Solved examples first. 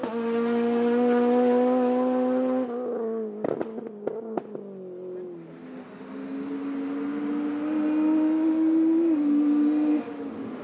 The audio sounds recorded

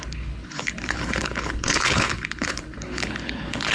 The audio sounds remade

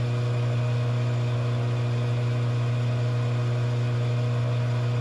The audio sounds recorded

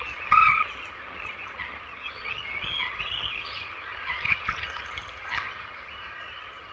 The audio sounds remade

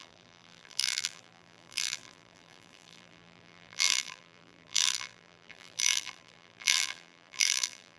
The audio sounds remade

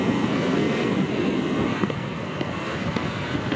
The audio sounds remade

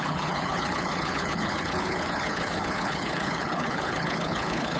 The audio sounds remade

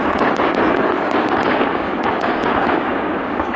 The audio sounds remade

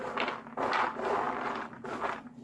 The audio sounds recorded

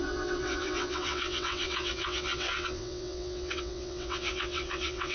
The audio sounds remade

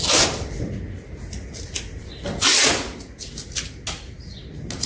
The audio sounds recorded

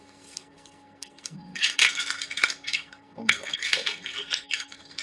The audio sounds remade